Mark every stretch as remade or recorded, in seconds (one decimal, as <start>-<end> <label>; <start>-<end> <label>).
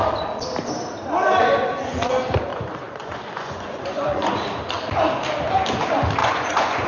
0.0-2.5 recorded; 2.5-4.4 remade; 4.4-6.2 recorded; 6.2-6.9 remade